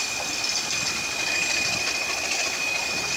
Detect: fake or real real